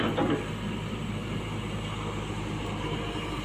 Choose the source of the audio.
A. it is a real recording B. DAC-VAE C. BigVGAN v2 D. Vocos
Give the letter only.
A